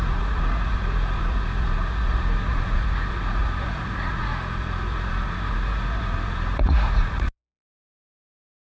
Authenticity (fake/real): fake